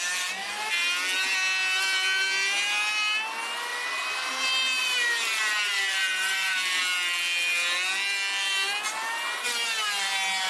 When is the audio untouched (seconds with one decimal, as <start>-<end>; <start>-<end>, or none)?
0.0-3.7; 4.3-4.8; 6.8-10.5